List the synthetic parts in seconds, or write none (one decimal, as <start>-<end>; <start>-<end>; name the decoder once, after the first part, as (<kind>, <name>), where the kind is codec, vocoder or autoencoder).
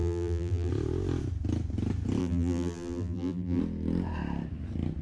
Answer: 0.0-0.7 (vocoder, BigVGAN v2); 2.2-3.6